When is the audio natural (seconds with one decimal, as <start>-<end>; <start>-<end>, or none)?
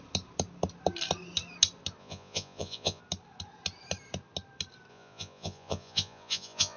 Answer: 0.0-2.0; 3.0-4.9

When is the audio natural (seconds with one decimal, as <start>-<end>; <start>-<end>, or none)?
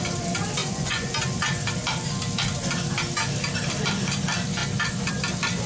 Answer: 0.0-0.6; 1.1-5.7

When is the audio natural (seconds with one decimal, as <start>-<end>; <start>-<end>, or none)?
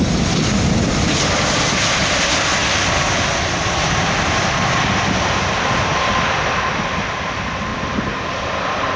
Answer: 0.0-9.0